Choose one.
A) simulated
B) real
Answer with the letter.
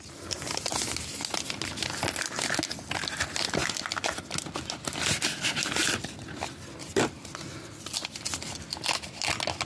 B